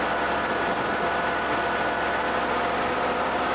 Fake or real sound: real